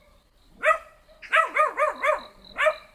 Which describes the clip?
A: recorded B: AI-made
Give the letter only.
A